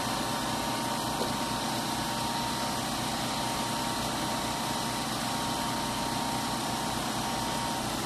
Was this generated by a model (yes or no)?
no